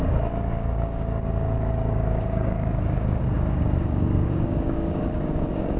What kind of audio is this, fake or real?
fake